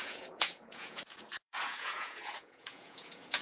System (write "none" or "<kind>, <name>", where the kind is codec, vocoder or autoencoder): vocoder, Vocos